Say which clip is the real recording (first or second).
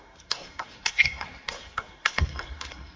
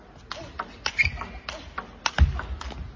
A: second